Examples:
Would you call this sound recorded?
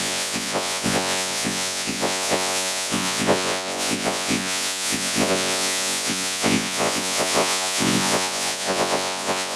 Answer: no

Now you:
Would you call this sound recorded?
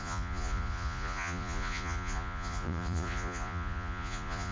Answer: no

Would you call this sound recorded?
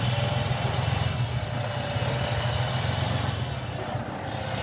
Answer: yes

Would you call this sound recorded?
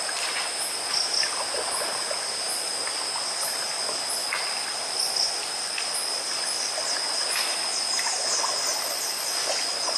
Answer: yes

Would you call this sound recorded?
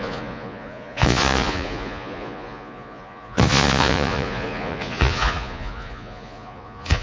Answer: no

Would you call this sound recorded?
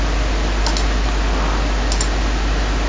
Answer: yes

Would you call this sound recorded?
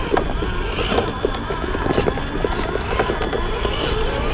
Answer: yes